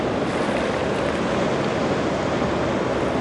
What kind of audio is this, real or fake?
real